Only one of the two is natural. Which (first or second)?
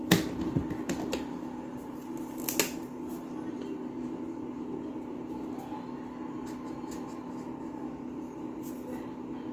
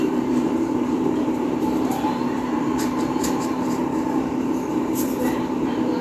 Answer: first